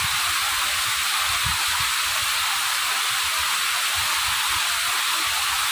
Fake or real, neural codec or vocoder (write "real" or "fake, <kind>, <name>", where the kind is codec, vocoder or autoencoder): real